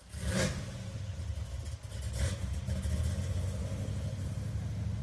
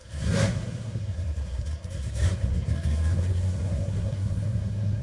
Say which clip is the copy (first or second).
second